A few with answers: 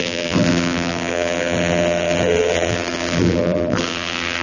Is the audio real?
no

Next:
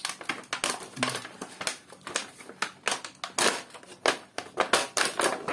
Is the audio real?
yes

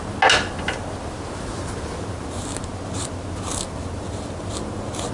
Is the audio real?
yes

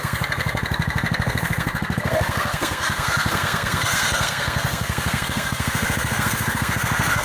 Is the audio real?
no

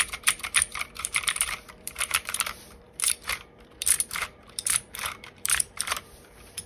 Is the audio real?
no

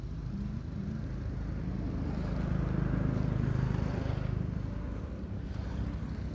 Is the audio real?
yes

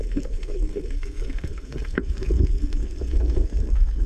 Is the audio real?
no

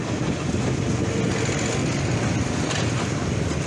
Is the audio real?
yes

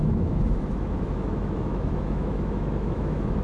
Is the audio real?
no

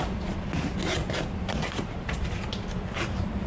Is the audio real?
yes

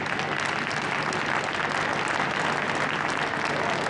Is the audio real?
yes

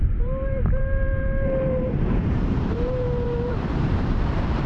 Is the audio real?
no